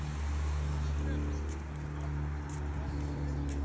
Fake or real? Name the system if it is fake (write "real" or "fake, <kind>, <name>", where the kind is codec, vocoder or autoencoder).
real